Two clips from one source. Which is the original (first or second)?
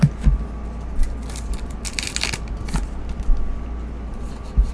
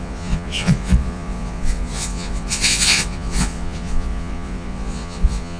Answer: first